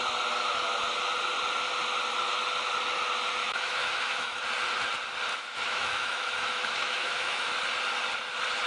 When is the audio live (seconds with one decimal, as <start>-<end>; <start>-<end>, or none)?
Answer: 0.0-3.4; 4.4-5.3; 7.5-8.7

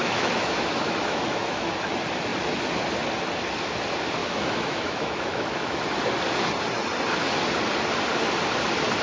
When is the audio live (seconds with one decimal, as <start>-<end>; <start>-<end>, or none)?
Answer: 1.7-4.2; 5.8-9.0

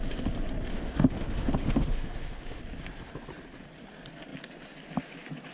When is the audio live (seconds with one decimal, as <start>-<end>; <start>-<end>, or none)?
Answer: 0.0-0.7; 2.6-5.5

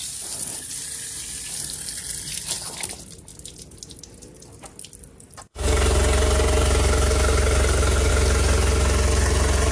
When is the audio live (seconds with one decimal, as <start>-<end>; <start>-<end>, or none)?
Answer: 0.0-9.7

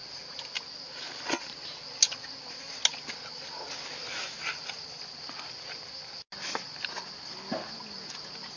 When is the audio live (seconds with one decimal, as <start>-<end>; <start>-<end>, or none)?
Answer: 0.0-8.6

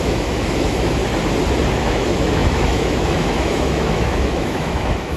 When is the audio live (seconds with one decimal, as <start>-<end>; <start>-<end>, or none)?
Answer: 1.0-1.7

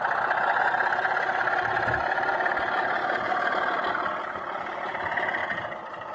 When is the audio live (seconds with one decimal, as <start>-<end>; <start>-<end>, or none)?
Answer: 0.0-6.1

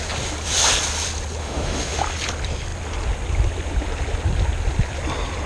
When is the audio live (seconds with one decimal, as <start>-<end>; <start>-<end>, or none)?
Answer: 0.0-1.4; 2.0-5.5